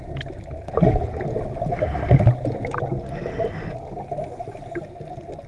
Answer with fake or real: real